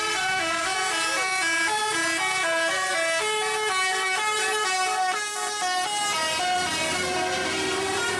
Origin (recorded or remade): remade